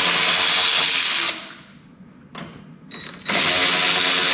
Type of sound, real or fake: real